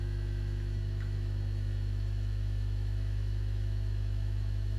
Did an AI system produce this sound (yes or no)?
yes